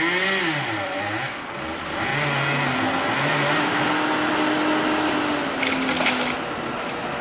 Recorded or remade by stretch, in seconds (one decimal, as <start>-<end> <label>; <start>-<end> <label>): 0.0-7.2 recorded

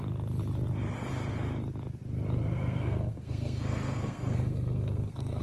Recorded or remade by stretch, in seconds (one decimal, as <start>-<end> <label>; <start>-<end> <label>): 0.0-2.4 recorded; 2.4-5.4 remade

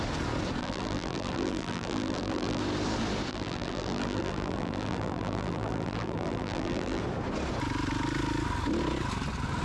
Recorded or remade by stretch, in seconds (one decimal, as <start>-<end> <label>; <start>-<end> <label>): 0.0-0.6 recorded; 0.6-2.6 remade; 2.6-3.3 recorded; 3.3-7.0 remade; 7.0-9.6 recorded

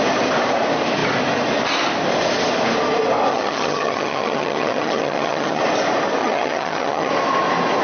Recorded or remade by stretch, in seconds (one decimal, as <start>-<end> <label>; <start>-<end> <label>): 0.0-3.3 recorded; 3.3-5.6 remade; 5.6-6.2 recorded; 6.2-7.1 remade; 7.1-7.8 recorded

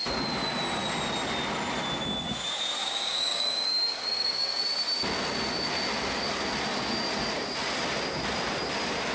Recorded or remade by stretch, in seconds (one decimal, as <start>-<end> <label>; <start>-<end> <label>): 0.0-2.8 recorded; 2.8-4.6 remade; 4.6-9.1 recorded

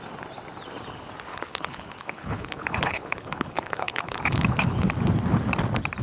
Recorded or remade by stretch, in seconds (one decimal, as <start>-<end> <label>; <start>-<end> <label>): 0.0-1.3 recorded; 1.3-4.9 remade; 4.9-6.0 recorded

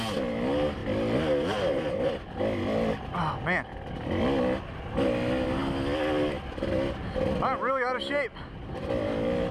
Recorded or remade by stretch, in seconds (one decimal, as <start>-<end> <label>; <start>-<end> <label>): 0.0-9.5 recorded

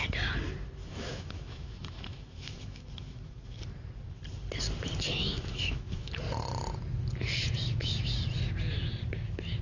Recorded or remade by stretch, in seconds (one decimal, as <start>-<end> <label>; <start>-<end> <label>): 0.0-0.8 recorded; 0.8-3.6 remade; 3.6-5.2 recorded; 5.2-6.2 remade; 6.2-9.6 recorded